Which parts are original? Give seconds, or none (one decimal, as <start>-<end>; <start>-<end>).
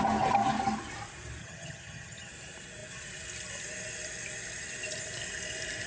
0.0-1.4; 2.3-5.9